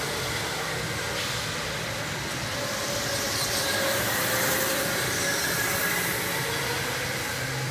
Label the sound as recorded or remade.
recorded